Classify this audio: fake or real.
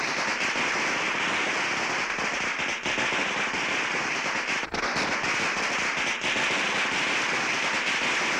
real